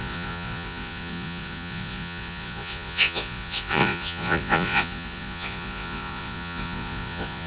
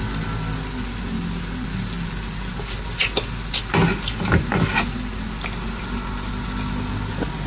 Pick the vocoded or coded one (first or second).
first